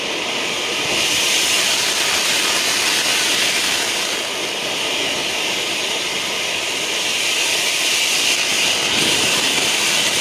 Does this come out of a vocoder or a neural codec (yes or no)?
no